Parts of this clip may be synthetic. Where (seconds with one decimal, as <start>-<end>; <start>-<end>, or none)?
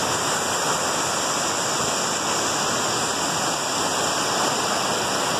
none